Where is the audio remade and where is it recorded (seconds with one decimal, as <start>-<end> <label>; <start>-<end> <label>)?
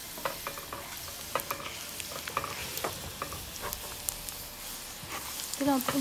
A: 0.0-2.6 recorded; 2.6-3.5 remade; 3.5-6.0 recorded